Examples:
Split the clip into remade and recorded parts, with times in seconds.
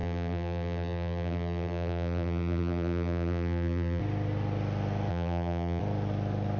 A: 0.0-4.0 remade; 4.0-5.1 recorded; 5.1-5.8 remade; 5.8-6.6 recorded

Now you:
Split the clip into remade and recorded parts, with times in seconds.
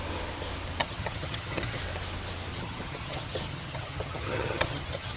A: 0.0-0.8 recorded; 0.8-1.8 remade; 1.8-2.5 recorded; 2.5-5.2 remade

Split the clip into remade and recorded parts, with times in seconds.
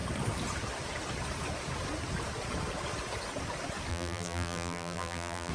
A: 0.0-3.9 recorded; 3.9-5.5 remade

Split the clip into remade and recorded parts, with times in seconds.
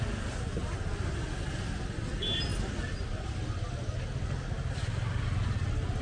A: 0.0-6.0 recorded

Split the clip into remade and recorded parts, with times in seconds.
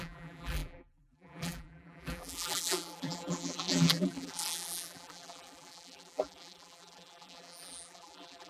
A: 0.0-8.5 remade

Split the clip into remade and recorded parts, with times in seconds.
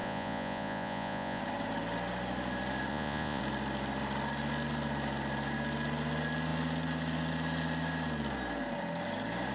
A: 0.0-1.4 remade; 1.4-2.9 recorded; 2.9-3.4 remade; 3.4-9.5 recorded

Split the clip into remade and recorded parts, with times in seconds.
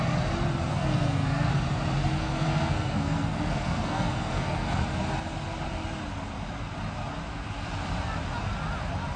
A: 0.0-0.7 recorded; 0.7-1.5 remade; 1.5-2.0 recorded; 2.0-4.8 remade; 4.8-9.2 recorded